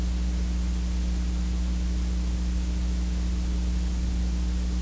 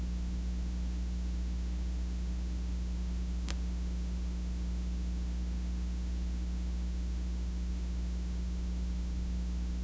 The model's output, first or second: second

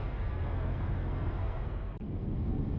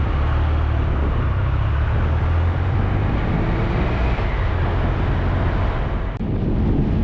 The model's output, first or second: first